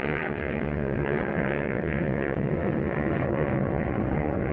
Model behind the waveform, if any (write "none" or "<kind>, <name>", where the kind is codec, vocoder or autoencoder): vocoder, WaveNeXt